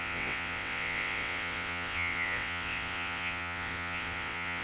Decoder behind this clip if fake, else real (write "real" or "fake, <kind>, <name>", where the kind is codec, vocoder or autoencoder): fake, vocoder, WaveNeXt